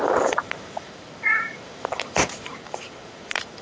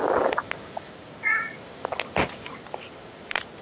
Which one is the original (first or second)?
second